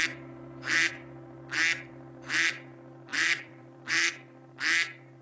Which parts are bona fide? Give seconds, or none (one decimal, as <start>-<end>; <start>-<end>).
0.0-3.1; 3.9-5.2

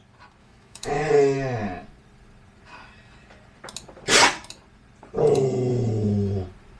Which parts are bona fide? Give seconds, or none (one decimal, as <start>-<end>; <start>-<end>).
0.0-0.4; 1.1-6.8